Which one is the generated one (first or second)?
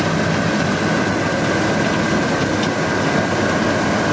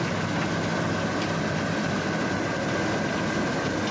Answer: second